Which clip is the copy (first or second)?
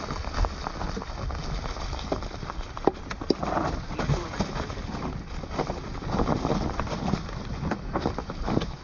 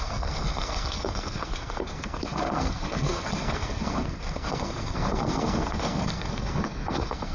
second